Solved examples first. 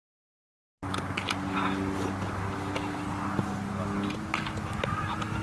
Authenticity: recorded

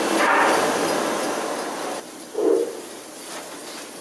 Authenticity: recorded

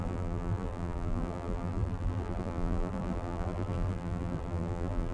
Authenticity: remade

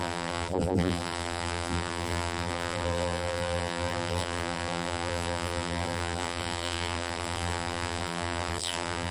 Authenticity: remade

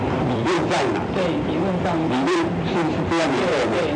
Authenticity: remade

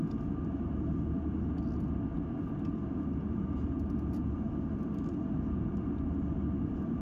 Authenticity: recorded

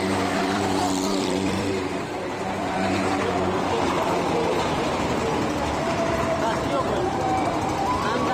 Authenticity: remade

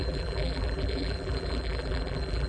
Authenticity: remade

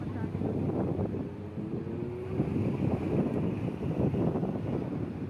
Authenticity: recorded